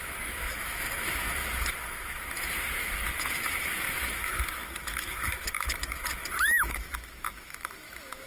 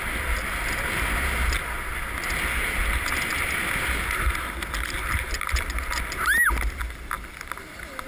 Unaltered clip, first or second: second